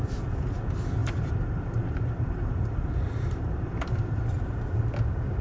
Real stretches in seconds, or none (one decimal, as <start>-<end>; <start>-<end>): 0.0-1.0; 4.2-5.4